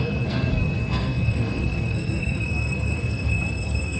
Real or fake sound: fake